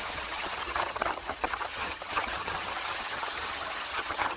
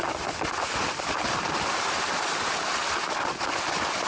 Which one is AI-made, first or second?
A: first